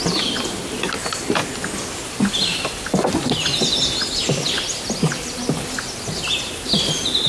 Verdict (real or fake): real